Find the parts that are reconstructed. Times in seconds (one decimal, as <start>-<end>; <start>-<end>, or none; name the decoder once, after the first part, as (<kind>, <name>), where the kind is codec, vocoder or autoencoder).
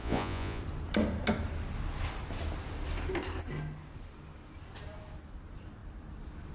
0.0-0.6 (vocoder, Vocos)